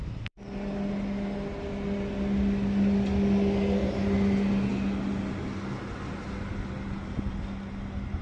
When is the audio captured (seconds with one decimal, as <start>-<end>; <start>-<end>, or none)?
0.0-8.2